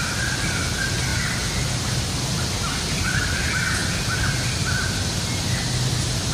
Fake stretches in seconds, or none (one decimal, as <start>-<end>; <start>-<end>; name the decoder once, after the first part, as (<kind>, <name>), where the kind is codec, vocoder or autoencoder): none